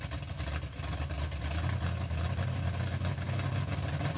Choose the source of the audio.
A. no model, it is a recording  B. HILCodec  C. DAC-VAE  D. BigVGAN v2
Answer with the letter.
A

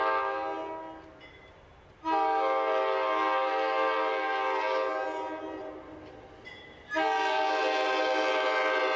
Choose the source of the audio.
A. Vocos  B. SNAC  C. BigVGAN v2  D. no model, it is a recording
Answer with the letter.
D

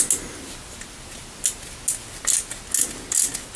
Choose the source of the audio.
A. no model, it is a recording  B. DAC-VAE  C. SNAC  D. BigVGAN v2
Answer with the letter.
A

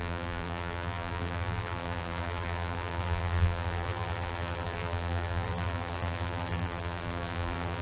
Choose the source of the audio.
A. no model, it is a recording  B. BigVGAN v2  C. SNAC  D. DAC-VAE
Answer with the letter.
B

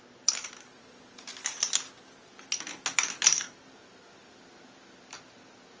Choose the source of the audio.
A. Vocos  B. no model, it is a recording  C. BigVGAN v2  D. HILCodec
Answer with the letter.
B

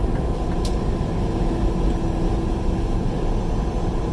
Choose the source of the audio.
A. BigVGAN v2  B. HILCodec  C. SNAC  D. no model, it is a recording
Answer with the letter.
D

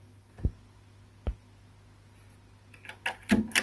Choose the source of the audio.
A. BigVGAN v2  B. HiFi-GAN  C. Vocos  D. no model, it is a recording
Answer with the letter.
D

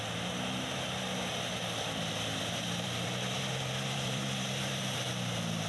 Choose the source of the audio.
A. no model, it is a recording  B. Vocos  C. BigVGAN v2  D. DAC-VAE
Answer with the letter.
C